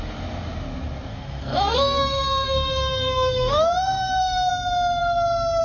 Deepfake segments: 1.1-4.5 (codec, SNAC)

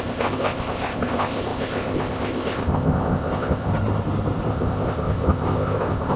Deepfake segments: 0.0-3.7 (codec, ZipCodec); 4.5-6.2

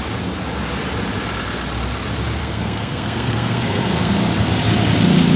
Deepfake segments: 2.4-4.1 (codec, SNAC)

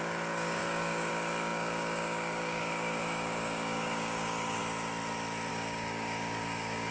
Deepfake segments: 0.0-4.6 (codec, DAC); 5.5-6.9

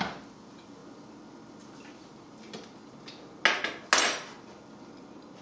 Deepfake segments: none